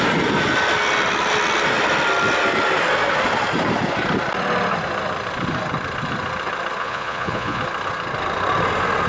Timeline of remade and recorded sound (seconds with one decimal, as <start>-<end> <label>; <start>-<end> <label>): 0.0-6.8 recorded; 6.8-7.6 remade; 7.6-9.1 recorded

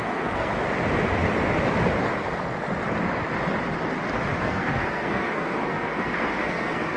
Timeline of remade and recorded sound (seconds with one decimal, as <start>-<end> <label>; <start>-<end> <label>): 0.0-0.5 remade; 0.5-4.4 recorded; 4.4-7.0 remade